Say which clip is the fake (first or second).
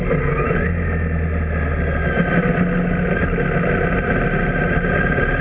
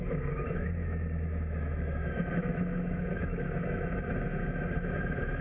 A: second